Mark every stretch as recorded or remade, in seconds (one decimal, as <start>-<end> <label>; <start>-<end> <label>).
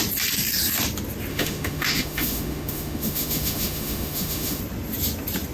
0.0-1.3 recorded; 1.3-4.6 remade; 4.6-5.5 recorded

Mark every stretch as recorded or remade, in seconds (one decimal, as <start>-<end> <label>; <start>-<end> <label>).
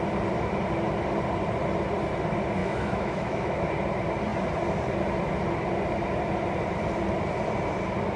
0.0-2.6 recorded; 2.6-3.7 remade; 3.7-8.2 recorded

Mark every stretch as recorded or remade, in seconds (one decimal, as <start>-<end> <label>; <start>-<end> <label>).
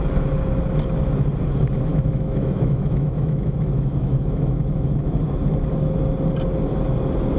0.0-1.9 recorded; 1.9-5.2 remade; 5.2-7.4 recorded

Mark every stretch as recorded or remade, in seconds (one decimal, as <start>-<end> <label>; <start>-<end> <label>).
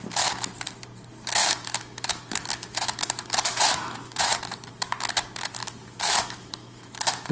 0.0-1.4 recorded; 1.4-4.4 remade; 4.4-5.6 recorded; 5.6-7.3 remade